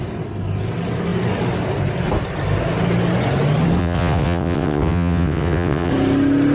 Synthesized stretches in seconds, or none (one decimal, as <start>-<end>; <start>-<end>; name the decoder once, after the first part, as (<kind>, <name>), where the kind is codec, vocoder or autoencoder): 3.8-5.9 (vocoder, WaveNeXt)